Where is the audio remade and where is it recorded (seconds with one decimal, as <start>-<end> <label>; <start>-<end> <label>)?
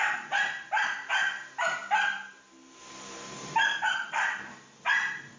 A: 0.0-5.4 recorded